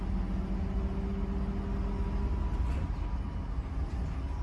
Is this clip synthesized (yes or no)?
no